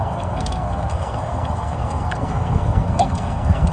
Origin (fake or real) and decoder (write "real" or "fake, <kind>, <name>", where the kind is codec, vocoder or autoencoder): fake, codec, SNAC